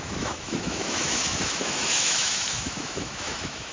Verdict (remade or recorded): remade